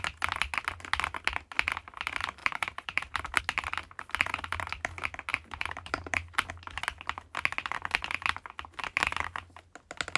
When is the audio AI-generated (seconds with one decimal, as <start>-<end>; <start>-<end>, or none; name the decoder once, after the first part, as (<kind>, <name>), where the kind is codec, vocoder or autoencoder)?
2.4-3.4 (vocoder, BigVGAN v2); 5.3-6.5

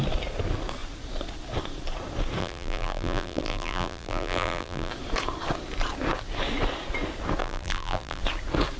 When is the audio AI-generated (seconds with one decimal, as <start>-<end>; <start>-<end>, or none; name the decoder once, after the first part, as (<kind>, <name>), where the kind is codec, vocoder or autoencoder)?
2.4-4.9 (vocoder, BigVGAN v2); 7.4-8.2

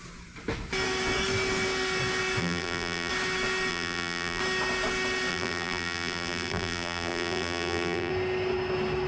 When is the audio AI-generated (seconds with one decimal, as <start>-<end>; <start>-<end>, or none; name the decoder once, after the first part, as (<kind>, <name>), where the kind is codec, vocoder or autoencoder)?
2.4-3.1 (vocoder, BigVGAN v2); 3.7-4.4; 5.3-8.1

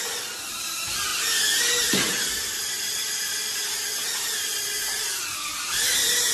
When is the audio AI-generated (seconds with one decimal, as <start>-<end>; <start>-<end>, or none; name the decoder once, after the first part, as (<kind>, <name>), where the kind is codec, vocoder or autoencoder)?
0.0-1.1 (vocoder, BigVGAN v2); 1.9-3.6; 4.9-6.3

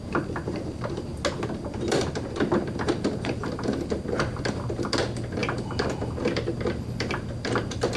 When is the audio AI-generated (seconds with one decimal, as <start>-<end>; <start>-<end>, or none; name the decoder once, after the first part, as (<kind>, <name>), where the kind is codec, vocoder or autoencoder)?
0.0-1.1 (vocoder, BigVGAN v2); 2.4-8.0

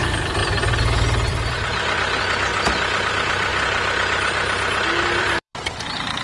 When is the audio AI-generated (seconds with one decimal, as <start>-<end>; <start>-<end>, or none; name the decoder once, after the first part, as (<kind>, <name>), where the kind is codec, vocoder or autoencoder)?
0.0-0.4 (vocoder, BigVGAN v2); 1.3-2.5; 3.1-3.5; 5.2-6.2

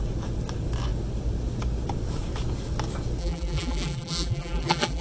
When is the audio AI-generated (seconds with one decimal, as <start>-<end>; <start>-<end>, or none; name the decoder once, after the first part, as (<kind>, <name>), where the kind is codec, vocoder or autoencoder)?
3.2-5.0 (vocoder, BigVGAN v2)